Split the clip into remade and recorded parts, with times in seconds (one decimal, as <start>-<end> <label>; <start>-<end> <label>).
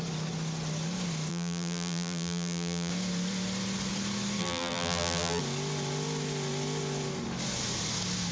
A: 0.0-1.3 recorded; 1.3-2.9 remade; 2.9-4.4 recorded; 4.4-5.4 remade; 5.4-8.3 recorded